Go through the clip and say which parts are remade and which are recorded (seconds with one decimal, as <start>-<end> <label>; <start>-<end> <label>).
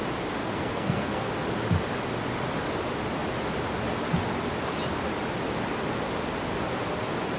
0.0-0.4 recorded; 0.4-1.3 remade; 1.3-7.4 recorded